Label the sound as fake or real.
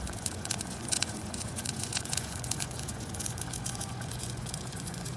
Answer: fake